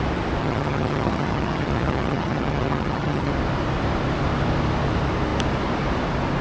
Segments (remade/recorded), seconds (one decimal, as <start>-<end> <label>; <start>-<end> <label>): 0.0-0.4 recorded; 0.4-3.3 remade; 3.3-6.4 recorded